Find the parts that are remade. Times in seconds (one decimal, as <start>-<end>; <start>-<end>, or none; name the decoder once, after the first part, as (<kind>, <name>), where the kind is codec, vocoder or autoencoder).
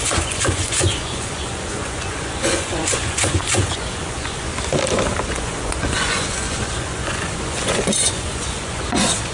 0.0-4.5 (vocoder, Vocos); 5.3-9.3